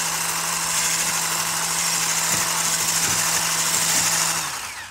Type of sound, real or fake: real